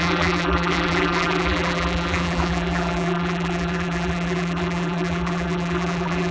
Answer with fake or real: fake